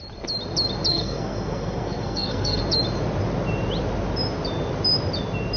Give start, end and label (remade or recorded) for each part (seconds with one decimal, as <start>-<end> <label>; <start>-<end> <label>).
0.0-0.9 recorded; 0.9-2.6 remade; 2.6-5.6 recorded